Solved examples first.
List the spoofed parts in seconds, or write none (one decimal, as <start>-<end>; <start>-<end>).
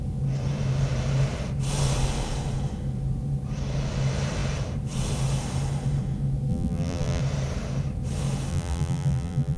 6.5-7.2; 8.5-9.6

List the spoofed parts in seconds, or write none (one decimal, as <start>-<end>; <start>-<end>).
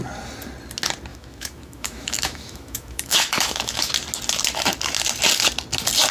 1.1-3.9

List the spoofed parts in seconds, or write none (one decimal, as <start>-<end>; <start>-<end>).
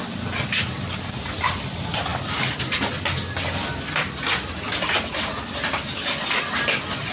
none